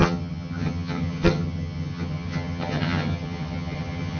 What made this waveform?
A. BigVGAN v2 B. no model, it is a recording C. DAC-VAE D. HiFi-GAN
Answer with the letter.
D